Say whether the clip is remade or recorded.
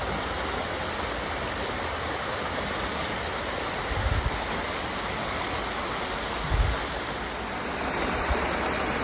recorded